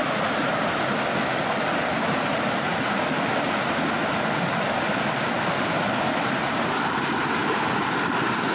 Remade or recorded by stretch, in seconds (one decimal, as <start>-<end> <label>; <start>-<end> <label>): 0.0-8.5 recorded